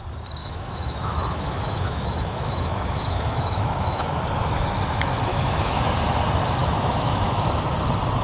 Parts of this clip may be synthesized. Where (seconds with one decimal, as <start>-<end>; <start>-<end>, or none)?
0.4-4.2; 5.3-5.9; 6.6-7.4